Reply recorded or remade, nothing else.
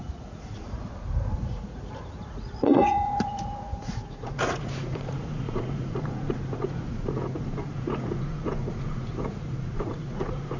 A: remade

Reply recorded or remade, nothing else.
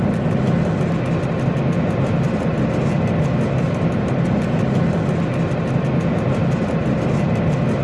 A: recorded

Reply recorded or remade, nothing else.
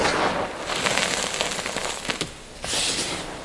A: recorded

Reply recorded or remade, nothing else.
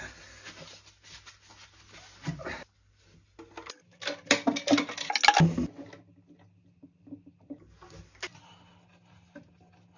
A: recorded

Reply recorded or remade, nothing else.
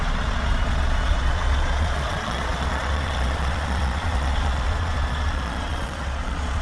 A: remade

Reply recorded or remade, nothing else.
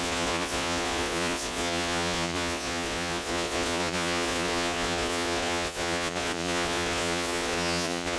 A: remade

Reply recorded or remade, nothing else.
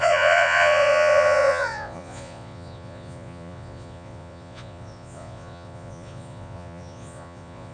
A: remade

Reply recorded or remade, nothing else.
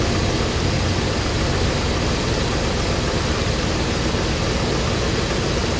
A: recorded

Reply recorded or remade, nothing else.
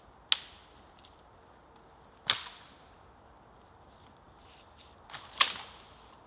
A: recorded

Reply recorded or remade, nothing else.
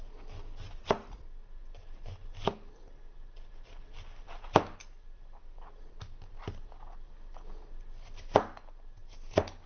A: recorded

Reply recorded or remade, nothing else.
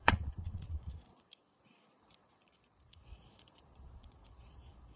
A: remade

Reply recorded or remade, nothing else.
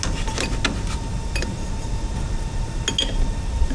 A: recorded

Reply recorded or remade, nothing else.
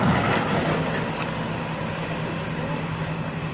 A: recorded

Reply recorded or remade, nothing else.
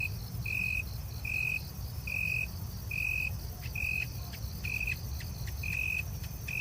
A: recorded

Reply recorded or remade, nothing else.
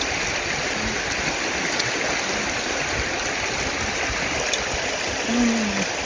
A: recorded